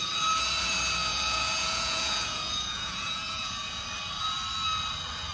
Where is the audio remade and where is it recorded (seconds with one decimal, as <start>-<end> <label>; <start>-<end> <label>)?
0.0-1.0 recorded; 1.0-3.8 remade; 3.8-5.3 recorded